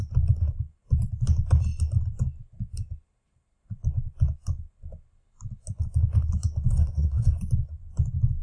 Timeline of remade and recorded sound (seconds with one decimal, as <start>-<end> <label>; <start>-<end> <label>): 0.0-6.7 recorded; 6.7-7.4 remade; 7.4-8.4 recorded